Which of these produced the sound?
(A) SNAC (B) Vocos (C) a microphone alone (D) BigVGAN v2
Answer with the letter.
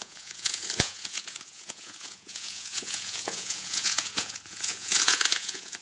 B